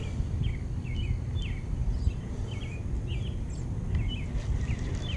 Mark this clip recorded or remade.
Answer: recorded